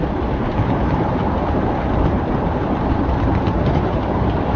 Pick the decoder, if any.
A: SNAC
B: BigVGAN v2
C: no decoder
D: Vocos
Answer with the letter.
C